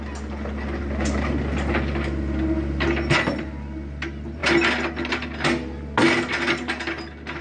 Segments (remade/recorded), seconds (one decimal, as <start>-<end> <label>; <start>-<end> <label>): 0.0-7.4 recorded